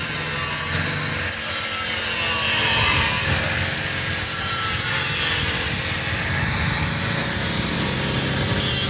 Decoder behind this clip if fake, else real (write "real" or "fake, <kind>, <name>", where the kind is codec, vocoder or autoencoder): real